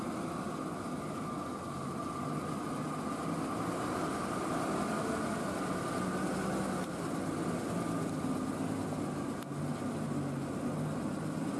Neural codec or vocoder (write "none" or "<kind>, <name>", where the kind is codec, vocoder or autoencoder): none